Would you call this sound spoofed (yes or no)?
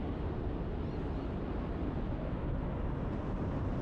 no